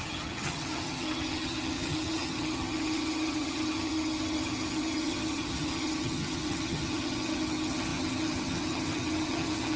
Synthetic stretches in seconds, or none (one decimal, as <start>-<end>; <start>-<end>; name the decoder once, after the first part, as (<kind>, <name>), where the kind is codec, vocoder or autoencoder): 0.0-9.8 (vocoder, HiFi-GAN)